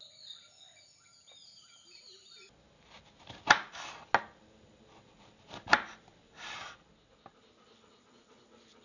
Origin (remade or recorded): recorded